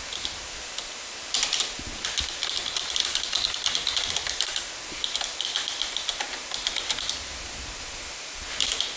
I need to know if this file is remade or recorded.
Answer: recorded